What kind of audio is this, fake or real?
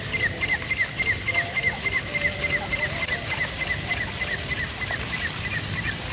real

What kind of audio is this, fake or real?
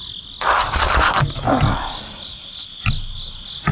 real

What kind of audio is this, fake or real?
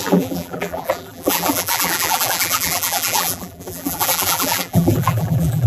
fake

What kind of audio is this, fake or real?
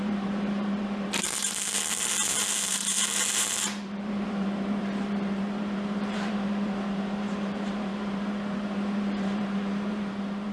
fake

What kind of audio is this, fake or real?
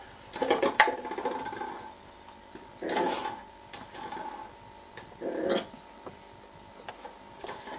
real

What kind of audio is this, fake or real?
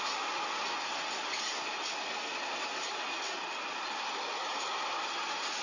real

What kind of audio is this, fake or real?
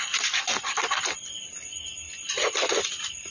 real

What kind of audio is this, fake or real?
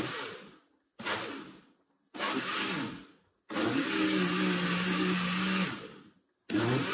real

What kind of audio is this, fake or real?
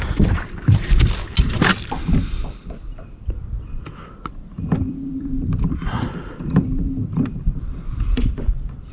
fake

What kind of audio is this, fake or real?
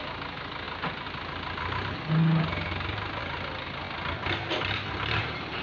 real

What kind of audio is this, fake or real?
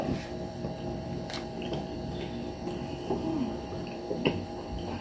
fake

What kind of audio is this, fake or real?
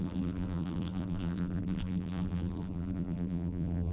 fake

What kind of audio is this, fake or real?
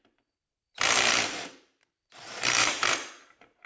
fake